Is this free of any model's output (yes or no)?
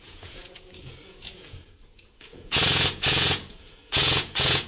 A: no